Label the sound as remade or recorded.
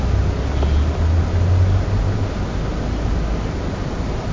recorded